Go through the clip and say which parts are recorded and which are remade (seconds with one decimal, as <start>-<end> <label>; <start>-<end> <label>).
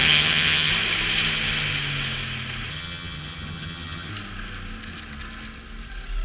0.0-0.7 remade; 0.7-2.7 recorded; 2.7-4.1 remade; 4.1-6.2 recorded